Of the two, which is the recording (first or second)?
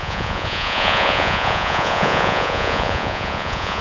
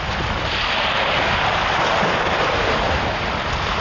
second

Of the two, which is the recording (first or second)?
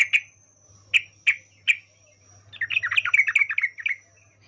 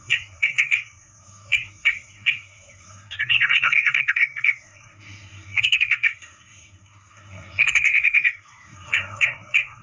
first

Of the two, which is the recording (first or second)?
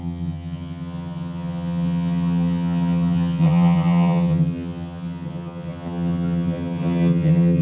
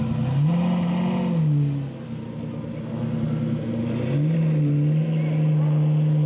second